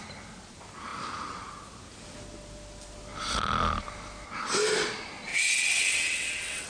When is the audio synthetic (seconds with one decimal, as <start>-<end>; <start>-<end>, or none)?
5.3-6.7